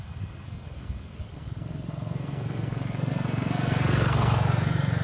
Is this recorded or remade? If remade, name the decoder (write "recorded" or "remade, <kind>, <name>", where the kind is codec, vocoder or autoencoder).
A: remade, codec, SNAC